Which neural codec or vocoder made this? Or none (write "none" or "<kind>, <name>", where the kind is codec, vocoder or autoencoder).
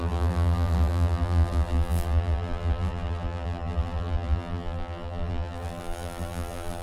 vocoder, BigVGAN v2